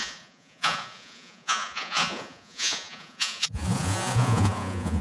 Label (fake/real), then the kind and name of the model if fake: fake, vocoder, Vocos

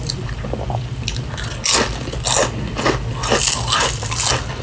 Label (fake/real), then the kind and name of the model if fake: real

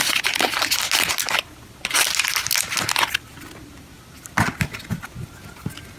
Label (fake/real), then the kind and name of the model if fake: real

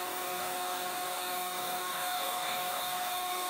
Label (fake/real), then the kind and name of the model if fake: fake, codec, DAC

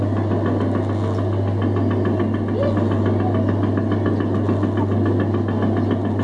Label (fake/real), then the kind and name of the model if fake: real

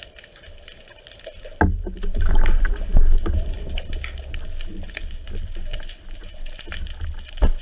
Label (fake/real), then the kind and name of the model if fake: real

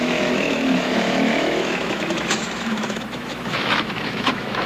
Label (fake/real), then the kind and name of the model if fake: fake, autoencoder, DAC-VAE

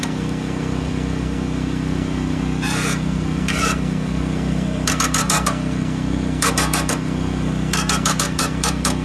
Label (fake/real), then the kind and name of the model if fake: fake, codec, SNAC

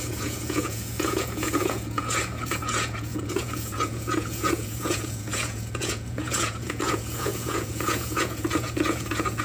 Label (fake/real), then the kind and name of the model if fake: fake, vocoder, Vocos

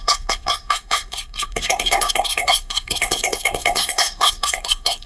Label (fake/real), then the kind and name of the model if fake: fake, codec, SNAC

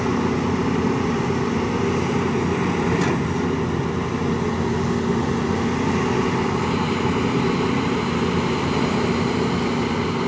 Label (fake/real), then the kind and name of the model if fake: real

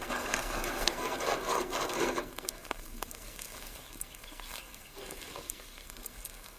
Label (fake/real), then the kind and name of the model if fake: fake, codec, SNAC